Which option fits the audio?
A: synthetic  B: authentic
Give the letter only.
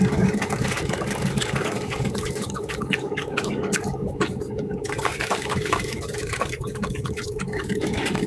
A